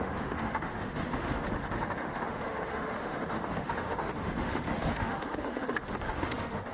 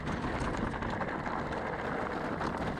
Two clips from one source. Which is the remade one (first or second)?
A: first